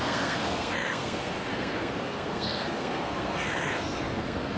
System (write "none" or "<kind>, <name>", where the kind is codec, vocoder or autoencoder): codec, SNAC